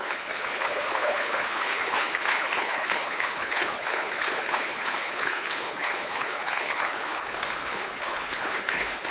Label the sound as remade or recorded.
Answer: remade